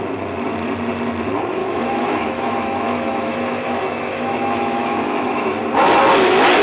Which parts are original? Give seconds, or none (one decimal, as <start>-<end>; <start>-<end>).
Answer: 0.0-1.6; 5.6-6.6